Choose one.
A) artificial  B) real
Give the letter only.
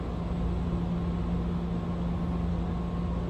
B